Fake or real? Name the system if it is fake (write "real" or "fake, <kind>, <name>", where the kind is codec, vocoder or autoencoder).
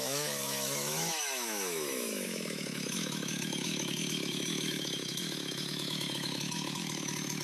fake, autoencoder, DAC-VAE